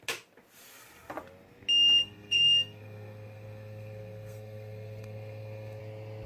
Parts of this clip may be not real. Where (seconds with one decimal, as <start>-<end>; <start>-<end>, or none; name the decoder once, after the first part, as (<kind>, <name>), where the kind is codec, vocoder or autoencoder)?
2.0-5.8 (codec, SNAC)